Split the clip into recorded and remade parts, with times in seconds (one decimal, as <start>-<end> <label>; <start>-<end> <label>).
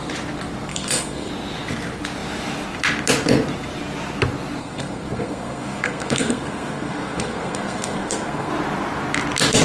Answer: 0.0-0.7 recorded; 0.7-1.3 remade; 1.3-4.6 recorded; 4.6-8.5 remade; 8.5-9.6 recorded